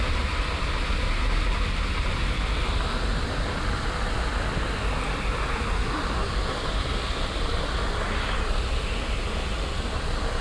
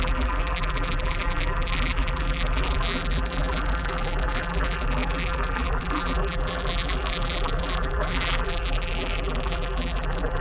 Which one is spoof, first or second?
second